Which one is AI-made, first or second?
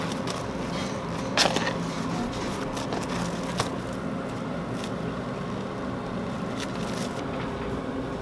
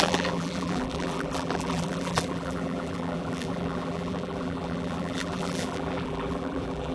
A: second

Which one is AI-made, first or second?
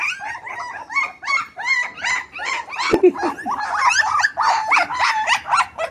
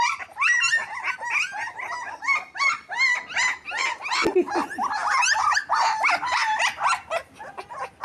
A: first